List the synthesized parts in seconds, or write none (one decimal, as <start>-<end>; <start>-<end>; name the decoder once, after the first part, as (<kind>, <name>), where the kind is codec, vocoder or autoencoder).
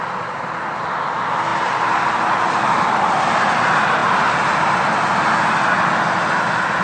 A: none